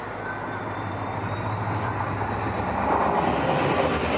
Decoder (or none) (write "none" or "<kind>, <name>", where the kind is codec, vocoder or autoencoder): none